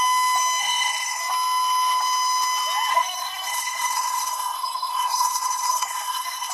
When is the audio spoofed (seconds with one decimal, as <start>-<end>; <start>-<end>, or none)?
0.6-1.2; 2.9-6.5

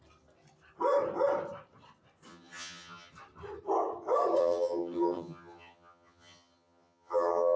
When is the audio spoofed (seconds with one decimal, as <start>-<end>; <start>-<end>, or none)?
2.3-3.1; 4.4-7.6

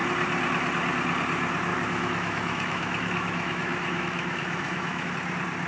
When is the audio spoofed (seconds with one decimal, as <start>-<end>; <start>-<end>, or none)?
1.7-5.1